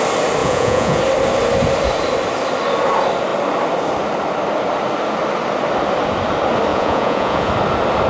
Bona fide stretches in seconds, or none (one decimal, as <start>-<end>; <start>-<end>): 0.0-0.4; 1.0-6.7; 7.5-8.1